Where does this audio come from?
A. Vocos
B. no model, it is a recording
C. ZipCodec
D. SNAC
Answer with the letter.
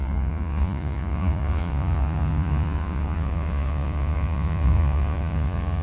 A